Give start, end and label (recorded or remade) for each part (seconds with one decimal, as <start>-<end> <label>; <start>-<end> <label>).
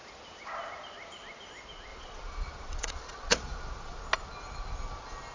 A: 0.0-1.9 recorded; 1.9-4.0 remade; 4.0-5.3 recorded